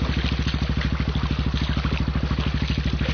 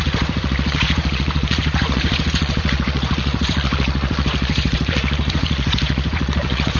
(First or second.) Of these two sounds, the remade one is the second